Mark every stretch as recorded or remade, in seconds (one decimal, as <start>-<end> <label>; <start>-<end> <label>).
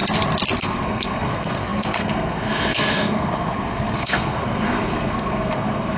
0.0-0.6 recorded; 0.6-6.0 remade